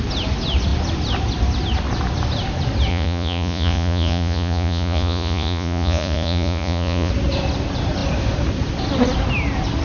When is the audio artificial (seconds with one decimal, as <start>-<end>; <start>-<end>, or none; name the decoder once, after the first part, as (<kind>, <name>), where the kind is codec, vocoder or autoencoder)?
2.9-7.1 (vocoder, Vocos)